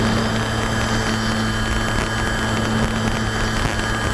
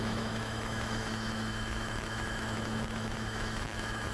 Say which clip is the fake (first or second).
second